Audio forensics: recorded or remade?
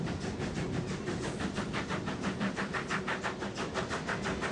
recorded